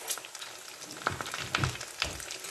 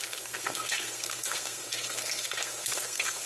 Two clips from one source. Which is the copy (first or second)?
second